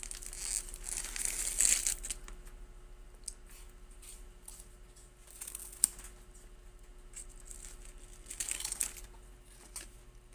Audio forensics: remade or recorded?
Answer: recorded